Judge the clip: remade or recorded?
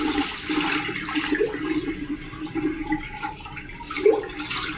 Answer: remade